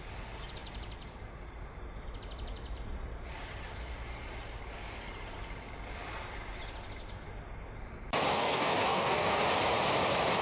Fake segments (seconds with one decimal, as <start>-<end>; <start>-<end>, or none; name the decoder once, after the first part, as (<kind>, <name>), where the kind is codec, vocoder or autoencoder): 8.3-9.4 (codec, SNAC)